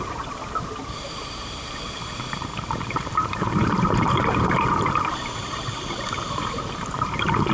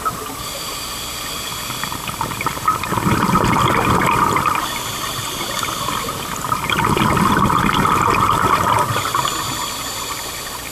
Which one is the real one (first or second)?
second